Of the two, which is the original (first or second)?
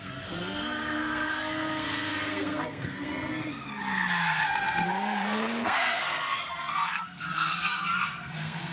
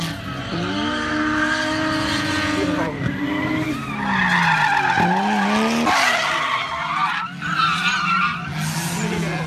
second